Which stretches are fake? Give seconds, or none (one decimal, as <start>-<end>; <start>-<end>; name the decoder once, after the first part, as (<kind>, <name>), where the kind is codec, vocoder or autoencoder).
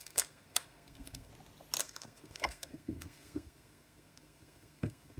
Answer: 0.0-1.3 (codec, SNAC); 1.8-5.2